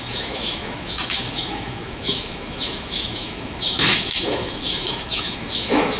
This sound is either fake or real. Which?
fake